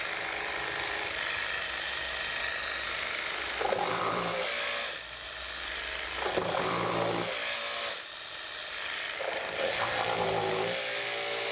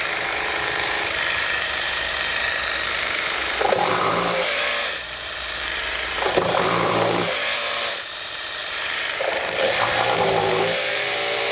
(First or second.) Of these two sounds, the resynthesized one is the second